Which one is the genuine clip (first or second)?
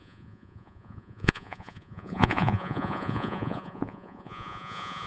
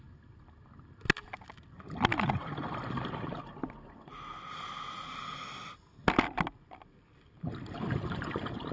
second